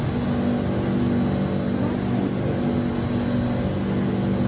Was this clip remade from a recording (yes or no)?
no